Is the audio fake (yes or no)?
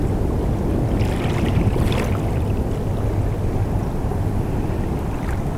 no